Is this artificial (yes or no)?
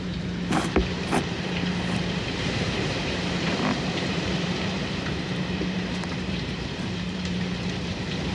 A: yes